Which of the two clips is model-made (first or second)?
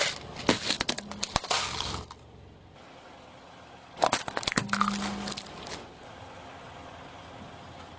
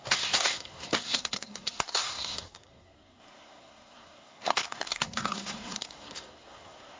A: second